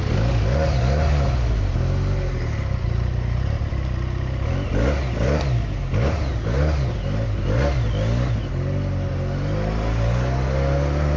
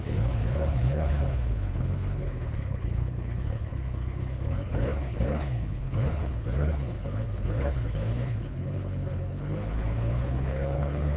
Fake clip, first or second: second